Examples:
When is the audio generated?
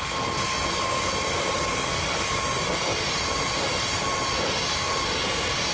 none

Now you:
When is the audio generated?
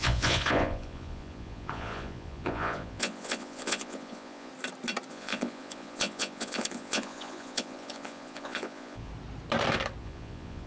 0.0-4.5 (vocoder, Vocos); 5.1-9.1; 10.0-10.7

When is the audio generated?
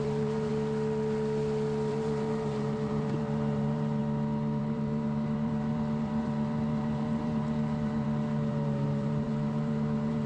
0.0-0.5 (vocoder, BigVGAN v2); 1.9-4.0; 4.6-10.3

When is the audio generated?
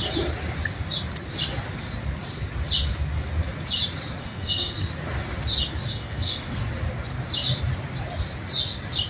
4.2-4.9 (codec, SNAC); 5.9-6.6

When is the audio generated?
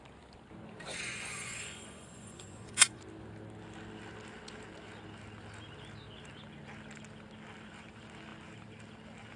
0.9-3.0 (vocoder, Vocos)